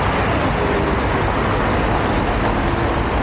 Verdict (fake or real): real